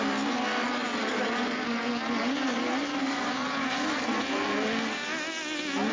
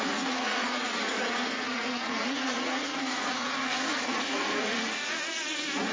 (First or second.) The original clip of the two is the first